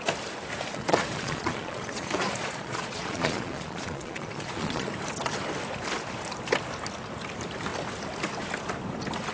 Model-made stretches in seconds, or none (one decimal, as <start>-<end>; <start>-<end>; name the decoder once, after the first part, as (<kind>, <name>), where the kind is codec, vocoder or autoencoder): 0.7-4.9 (vocoder, Vocos)